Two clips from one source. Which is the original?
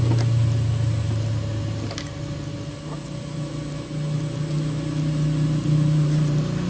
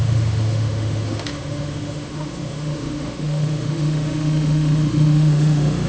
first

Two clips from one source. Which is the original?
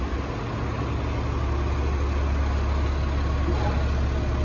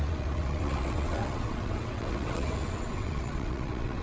first